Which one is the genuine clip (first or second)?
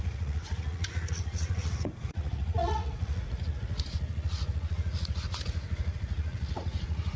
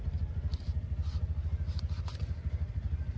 second